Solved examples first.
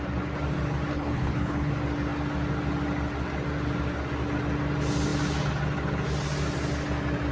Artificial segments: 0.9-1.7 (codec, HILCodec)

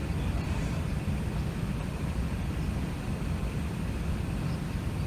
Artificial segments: none

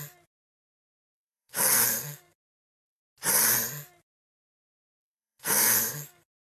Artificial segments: 1.0-3.0 (codec, SNAC); 4.9-6.5

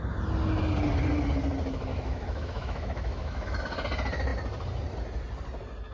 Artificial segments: 1.9-3.6 (autoencoder, DAC-VAE)